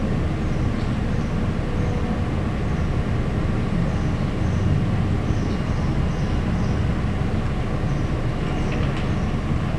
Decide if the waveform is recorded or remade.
recorded